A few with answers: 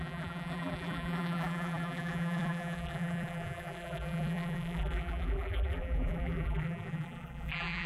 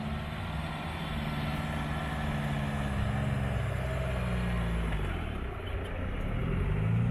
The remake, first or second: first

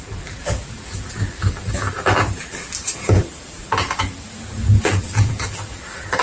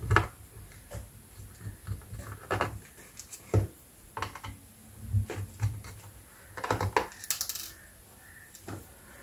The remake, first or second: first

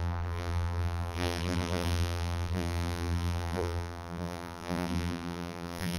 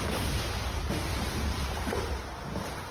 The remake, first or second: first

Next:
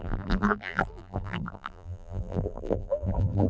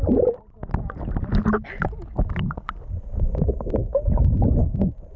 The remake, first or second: first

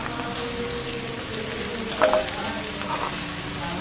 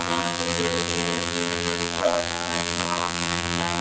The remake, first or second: second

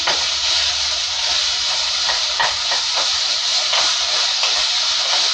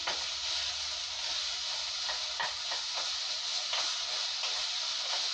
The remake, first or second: first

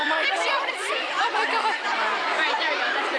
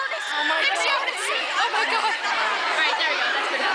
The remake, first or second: first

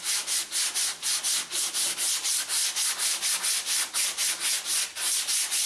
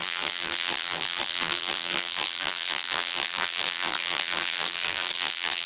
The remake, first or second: second